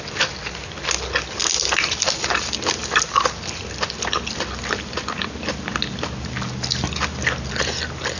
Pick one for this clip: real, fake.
real